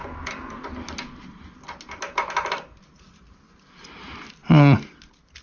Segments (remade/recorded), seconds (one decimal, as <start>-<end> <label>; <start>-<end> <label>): 0.0-5.4 recorded